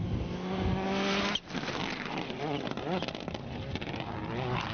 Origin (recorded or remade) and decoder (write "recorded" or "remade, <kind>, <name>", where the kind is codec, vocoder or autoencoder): recorded